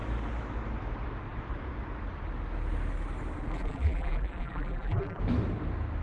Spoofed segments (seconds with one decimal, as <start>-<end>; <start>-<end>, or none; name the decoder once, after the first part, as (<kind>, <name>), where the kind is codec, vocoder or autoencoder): 3.5-5.2 (vocoder, BigVGAN v2)